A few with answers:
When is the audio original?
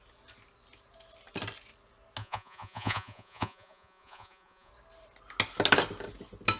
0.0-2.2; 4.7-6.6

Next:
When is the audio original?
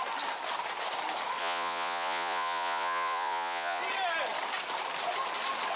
0.0-1.4; 3.8-5.8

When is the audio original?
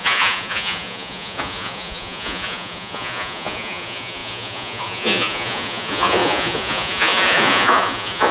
none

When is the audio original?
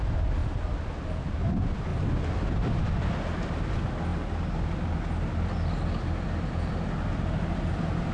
0.0-8.1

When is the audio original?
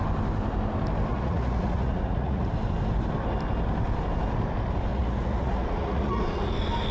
0.0-1.1; 2.5-4.9; 6.5-6.9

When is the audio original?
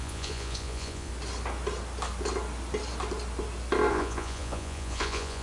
1.1-3.9